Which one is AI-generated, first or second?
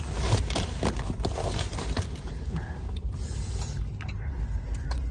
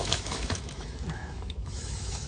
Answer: second